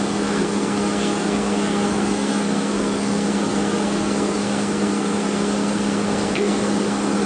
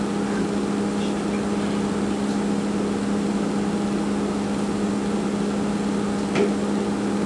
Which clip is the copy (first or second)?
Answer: first